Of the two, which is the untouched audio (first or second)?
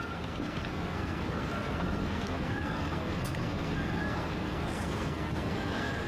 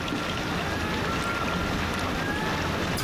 second